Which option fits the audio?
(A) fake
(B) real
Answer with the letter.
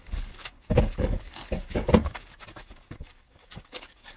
A